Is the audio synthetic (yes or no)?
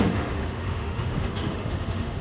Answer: yes